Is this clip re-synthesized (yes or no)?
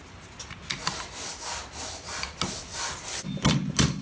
no